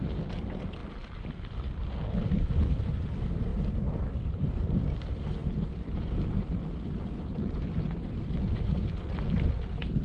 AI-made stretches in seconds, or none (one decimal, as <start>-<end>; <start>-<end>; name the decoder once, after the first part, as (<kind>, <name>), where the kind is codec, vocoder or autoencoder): 0.0-0.8 (vocoder, BigVGAN v2); 2.8-10.0